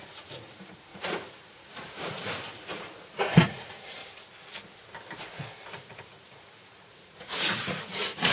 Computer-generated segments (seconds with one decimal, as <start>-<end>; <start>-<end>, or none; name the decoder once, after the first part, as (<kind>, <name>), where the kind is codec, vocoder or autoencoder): 0.0-4.0 (vocoder, Vocos); 5.7-8.3

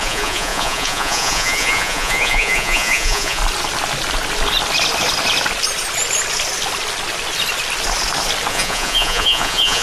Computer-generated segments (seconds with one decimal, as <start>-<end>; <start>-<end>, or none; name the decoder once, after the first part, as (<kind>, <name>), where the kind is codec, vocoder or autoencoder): 0.0-3.4 (vocoder, Vocos); 8.5-9.8

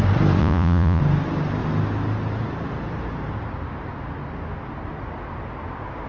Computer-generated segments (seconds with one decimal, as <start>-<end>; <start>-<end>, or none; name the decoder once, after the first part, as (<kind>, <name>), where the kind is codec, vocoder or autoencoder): 0.4-1.0 (vocoder, Vocos)

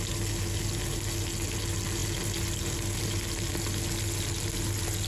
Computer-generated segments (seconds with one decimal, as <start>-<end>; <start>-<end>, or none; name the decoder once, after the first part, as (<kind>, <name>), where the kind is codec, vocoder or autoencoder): none

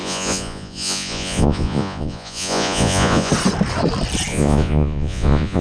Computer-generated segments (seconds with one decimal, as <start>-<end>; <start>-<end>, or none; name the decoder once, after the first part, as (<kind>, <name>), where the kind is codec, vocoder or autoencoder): 0.0-3.3 (vocoder, Vocos); 4.3-5.6

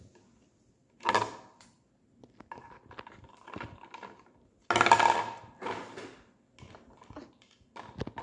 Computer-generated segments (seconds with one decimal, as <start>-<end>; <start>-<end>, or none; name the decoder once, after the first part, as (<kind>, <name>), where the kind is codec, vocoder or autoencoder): none

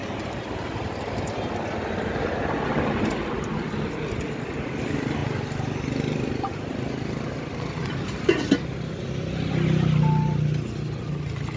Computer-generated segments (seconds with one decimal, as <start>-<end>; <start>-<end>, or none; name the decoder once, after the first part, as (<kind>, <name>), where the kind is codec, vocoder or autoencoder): none